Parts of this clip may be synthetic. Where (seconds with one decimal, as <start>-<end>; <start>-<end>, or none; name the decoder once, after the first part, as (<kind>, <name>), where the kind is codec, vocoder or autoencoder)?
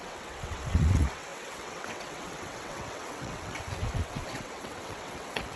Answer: 0.0-5.6 (vocoder, WaveNeXt)